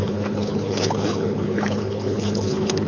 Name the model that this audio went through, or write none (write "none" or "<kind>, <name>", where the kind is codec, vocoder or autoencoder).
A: codec, HILCodec